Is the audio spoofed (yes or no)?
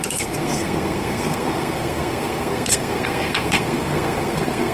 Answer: yes